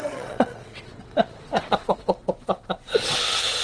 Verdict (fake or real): fake